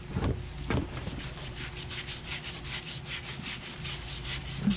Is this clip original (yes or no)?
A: yes